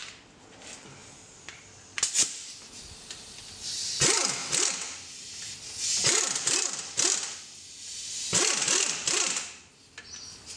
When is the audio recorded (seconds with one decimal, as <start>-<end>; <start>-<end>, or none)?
0.0-10.6